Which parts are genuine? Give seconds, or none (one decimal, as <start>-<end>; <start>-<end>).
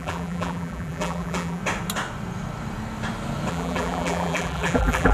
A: 1.6-3.5